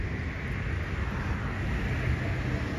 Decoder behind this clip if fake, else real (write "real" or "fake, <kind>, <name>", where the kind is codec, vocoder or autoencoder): real